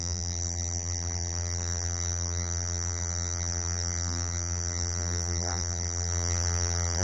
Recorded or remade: remade